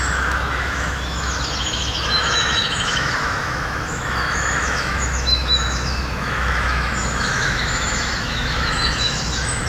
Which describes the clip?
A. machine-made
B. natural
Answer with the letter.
A